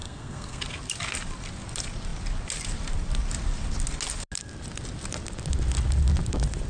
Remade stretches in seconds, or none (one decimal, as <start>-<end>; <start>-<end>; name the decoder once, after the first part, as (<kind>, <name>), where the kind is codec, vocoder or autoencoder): 0.0-0.6 (codec, SNAC)